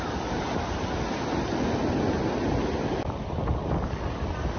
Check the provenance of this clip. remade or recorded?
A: recorded